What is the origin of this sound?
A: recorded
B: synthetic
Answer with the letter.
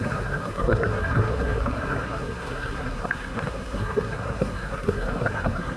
B